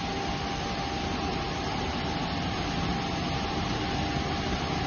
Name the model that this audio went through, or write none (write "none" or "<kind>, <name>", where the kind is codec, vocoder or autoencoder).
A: none